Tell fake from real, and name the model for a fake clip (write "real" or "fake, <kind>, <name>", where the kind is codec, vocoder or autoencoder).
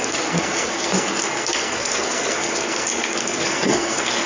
fake, codec, SNAC